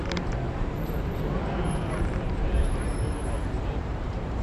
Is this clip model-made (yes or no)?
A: yes